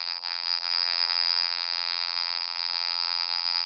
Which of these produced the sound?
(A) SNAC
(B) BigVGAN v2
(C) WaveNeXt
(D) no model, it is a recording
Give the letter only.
B